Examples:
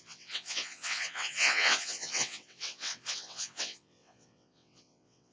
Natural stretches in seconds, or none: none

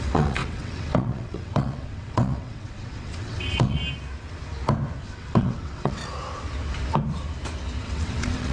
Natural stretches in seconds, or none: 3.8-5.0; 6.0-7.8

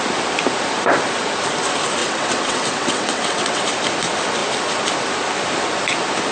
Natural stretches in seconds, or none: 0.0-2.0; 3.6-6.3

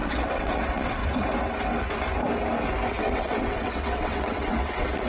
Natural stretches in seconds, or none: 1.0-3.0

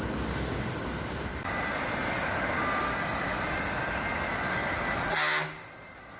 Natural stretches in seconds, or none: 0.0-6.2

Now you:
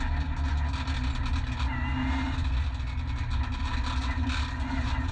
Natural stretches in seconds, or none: 0.0-5.1

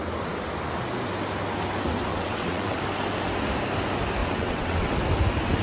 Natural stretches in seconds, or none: 0.0-2.1; 2.8-4.2; 4.9-5.6